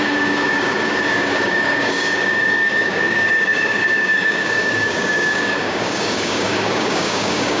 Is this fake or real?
fake